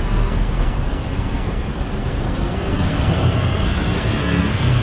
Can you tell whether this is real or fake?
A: fake